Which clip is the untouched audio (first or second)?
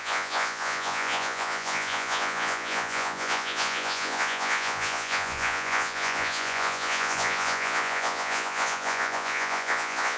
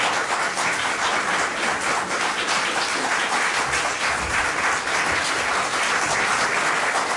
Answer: second